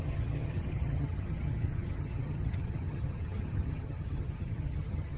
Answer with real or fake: fake